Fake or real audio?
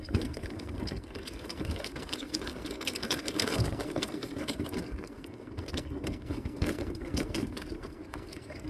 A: fake